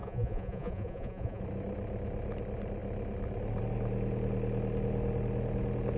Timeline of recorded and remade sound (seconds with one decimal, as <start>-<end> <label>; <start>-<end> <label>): 0.0-1.4 remade; 1.4-6.0 recorded